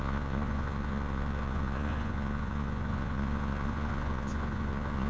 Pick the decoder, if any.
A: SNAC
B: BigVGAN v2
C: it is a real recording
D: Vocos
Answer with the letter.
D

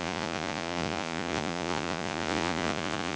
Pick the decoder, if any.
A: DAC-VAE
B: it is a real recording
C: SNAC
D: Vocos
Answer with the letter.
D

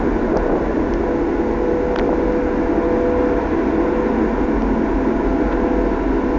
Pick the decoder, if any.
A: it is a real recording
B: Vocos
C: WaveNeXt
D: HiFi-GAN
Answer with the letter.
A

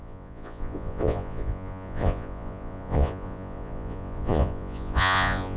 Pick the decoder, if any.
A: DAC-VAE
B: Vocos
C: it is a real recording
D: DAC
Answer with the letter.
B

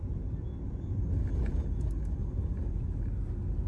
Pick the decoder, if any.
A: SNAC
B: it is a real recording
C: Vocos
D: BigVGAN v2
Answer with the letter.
B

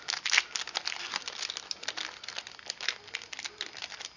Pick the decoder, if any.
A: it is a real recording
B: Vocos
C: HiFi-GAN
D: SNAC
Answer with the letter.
A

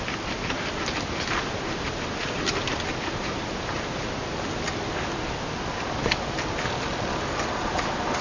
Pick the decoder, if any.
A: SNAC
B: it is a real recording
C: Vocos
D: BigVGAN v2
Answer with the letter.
B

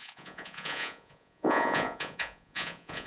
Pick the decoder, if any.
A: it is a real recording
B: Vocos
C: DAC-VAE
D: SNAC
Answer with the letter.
B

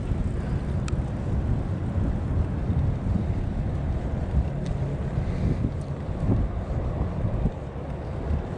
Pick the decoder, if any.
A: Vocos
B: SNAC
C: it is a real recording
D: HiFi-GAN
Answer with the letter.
C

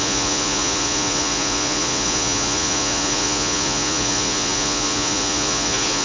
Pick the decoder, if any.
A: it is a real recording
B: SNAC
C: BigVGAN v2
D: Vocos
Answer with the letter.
D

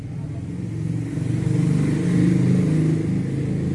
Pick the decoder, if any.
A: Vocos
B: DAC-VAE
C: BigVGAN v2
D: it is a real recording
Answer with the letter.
D